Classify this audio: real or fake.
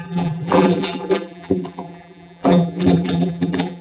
fake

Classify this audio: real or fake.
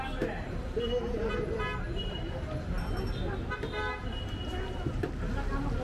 real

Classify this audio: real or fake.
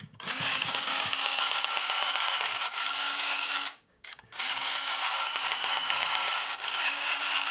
fake